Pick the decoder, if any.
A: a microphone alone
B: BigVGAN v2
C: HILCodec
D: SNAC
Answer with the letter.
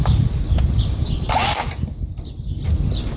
A